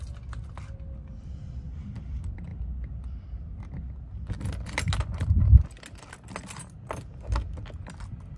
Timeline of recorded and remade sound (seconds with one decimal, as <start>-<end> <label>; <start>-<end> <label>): 0.0-8.4 recorded